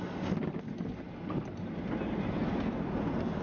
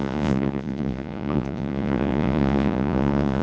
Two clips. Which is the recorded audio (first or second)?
first